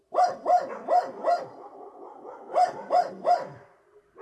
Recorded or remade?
recorded